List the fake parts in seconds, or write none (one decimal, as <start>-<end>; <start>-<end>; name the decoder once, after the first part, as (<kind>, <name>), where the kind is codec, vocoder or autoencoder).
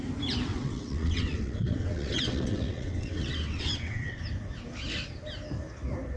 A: 0.5-4.2 (vocoder, WaveNeXt)